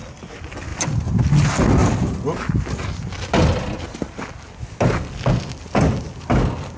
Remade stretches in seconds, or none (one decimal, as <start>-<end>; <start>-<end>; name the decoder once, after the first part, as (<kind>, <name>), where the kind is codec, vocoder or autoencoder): 0.7-1.2 (vocoder, BigVGAN v2)